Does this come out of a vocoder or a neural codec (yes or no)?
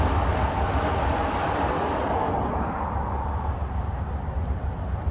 no